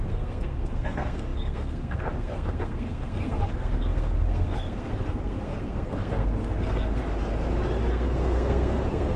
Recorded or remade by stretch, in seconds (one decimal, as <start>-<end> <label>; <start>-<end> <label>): 0.0-7.0 remade; 7.0-7.9 recorded; 7.9-9.2 remade